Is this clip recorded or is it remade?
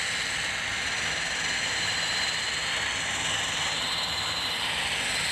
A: recorded